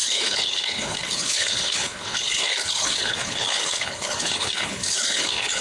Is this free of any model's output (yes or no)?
no